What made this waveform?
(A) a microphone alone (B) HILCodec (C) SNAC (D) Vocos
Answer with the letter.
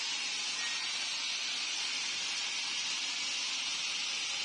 A